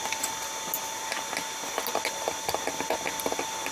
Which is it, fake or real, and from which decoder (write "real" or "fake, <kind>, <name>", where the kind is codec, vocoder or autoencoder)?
real